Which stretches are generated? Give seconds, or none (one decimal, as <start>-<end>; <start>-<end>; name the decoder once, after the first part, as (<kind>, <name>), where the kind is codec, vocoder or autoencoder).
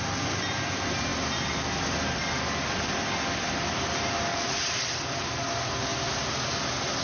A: 4.3-4.9 (vocoder, Vocos)